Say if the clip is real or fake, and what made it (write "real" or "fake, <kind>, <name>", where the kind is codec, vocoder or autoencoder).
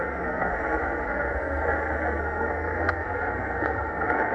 fake, codec, SNAC